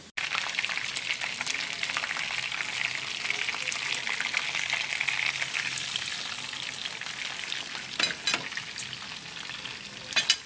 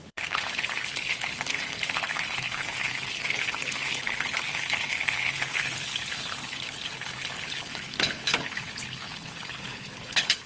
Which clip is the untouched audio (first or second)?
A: first